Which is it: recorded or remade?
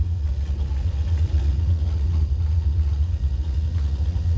remade